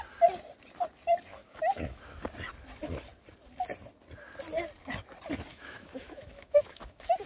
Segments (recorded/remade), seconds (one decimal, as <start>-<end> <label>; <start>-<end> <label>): 0.0-1.4 recorded; 1.4-2.0 remade; 2.0-5.5 recorded; 5.5-7.3 remade